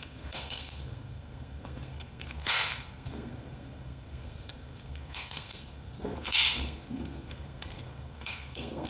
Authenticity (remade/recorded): remade